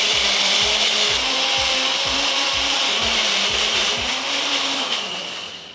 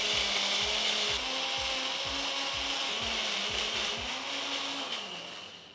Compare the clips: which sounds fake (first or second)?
first